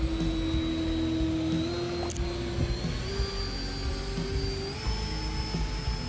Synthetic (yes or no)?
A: no